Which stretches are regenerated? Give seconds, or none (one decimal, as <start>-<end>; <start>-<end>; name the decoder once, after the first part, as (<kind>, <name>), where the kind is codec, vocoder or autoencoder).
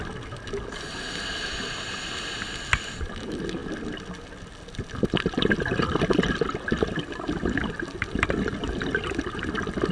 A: none